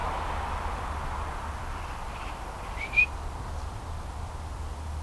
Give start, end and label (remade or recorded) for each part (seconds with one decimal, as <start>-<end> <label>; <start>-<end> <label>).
0.0-3.0 remade; 3.0-5.0 recorded